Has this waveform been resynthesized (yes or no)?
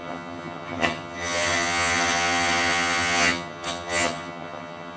yes